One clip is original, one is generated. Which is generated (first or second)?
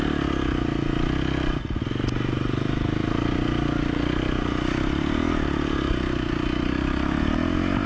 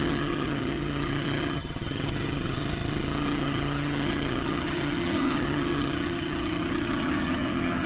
second